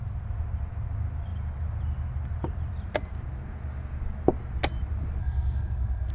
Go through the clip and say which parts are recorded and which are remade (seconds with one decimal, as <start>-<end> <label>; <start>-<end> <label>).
0.0-5.2 recorded; 5.2-6.1 remade